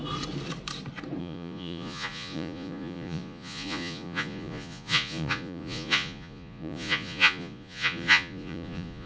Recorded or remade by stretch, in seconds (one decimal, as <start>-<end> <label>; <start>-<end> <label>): 0.0-1.2 recorded; 1.2-9.1 remade